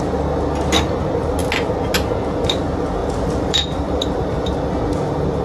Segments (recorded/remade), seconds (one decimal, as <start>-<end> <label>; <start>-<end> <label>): 0.0-3.0 recorded; 3.0-5.4 remade